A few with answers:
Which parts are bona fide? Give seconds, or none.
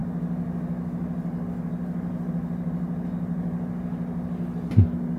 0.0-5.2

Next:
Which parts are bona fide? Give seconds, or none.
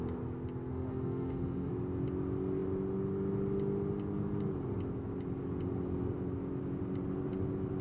0.0-0.7; 1.7-7.8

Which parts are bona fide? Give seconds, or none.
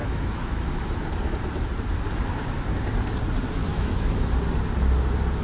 0.9-3.7; 4.3-5.4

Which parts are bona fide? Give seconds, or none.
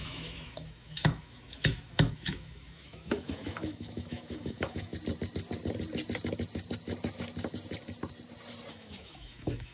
4.9-8.7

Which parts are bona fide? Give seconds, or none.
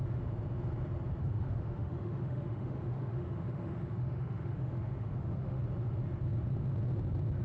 0.0-1.2; 5.6-7.4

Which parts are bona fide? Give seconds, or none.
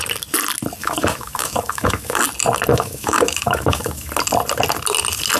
0.0-0.8; 2.2-2.7; 4.1-5.4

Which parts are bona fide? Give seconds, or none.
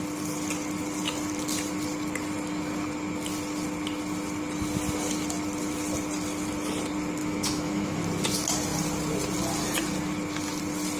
0.0-7.2; 8.0-11.0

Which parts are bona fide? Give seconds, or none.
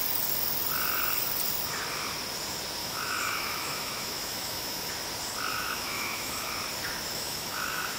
0.0-2.8; 4.9-5.5; 6.5-7.1